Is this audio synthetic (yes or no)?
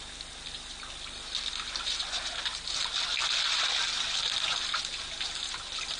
no